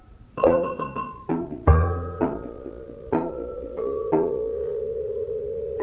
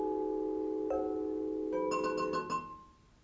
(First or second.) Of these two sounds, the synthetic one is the first